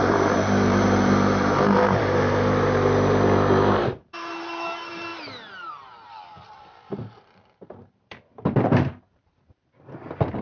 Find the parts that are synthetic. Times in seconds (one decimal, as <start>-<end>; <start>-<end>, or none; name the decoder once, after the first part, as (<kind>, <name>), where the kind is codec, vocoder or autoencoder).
0.0-5.1 (vocoder, BigVGAN v2); 5.7-10.4